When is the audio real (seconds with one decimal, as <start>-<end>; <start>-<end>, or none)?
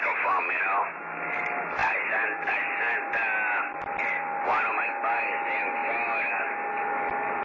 0.0-7.4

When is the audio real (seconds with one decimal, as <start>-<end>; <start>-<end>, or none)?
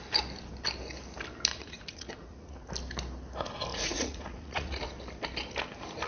0.0-1.5; 2.7-3.7; 4.8-6.1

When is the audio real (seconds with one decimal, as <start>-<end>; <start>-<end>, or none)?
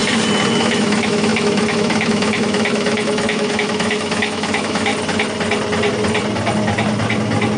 0.0-0.6; 4.9-7.6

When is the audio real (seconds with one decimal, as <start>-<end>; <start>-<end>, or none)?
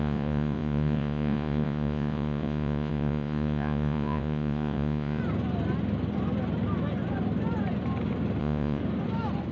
5.2-8.4; 8.8-9.5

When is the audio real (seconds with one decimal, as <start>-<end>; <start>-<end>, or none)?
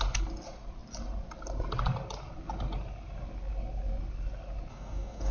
0.0-4.7